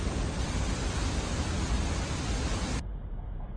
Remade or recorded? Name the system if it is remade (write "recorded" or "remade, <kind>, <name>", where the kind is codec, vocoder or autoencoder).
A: recorded